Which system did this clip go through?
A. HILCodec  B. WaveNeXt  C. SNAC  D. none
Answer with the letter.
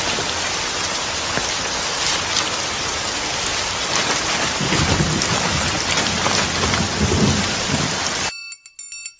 D